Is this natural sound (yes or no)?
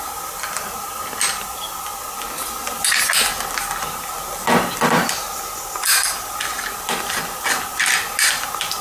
yes